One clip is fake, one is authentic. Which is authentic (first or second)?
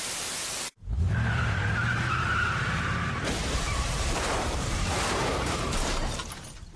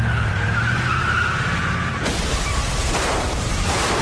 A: second